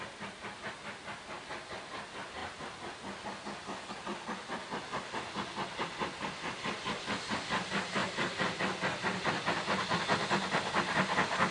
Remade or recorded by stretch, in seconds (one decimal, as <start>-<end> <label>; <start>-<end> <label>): 0.0-11.5 recorded